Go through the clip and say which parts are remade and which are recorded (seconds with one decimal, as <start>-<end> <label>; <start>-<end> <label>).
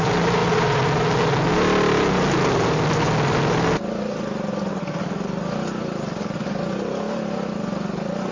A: 0.0-8.3 recorded